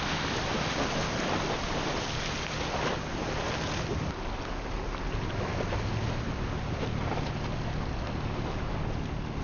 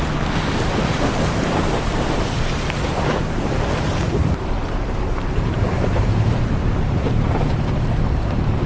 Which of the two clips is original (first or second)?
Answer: first